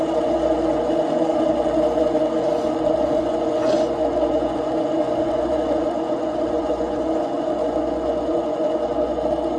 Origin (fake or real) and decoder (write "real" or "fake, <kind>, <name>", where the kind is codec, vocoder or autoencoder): fake, vocoder, Vocos